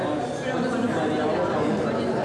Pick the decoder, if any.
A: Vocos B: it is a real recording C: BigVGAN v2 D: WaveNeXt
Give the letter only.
B